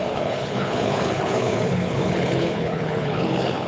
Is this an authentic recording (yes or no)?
no